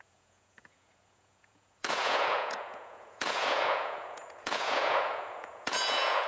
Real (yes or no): no